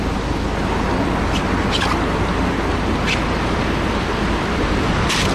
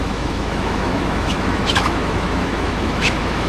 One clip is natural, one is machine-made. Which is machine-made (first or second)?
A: second